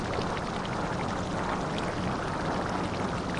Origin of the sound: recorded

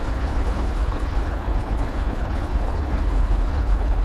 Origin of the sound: remade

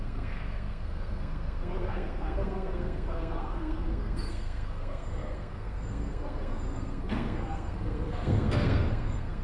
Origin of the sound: remade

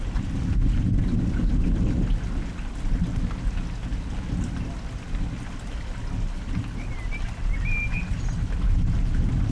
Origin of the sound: recorded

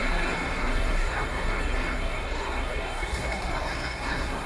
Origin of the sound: remade